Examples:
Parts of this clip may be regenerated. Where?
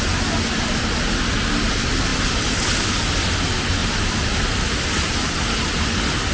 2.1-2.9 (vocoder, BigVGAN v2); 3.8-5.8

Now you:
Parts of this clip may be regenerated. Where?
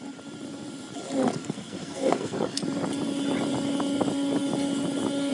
1.4-2.6 (codec, SNAC)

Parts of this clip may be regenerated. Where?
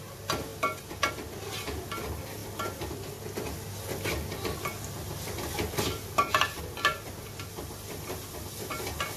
none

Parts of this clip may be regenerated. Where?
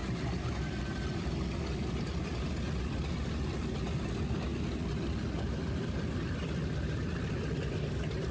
none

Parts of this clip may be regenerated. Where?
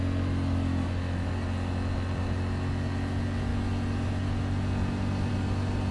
none